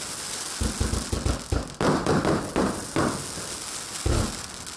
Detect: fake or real real